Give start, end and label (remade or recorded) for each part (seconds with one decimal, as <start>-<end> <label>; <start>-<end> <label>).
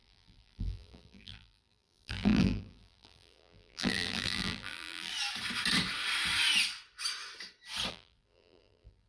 0.0-5.1 remade; 5.1-7.9 recorded; 7.9-9.1 remade